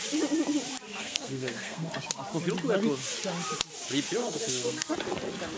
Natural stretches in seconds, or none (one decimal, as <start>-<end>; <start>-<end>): 0.0-1.0; 1.9-4.2; 4.9-5.6